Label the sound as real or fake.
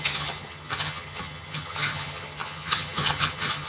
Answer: fake